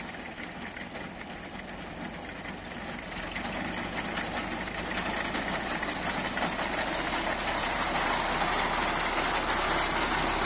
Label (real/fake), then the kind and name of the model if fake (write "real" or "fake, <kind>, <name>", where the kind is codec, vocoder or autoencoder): real